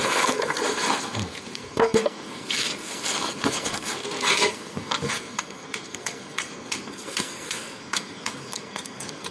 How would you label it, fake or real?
fake